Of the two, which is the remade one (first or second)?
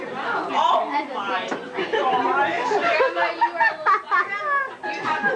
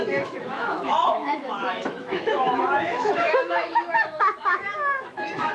second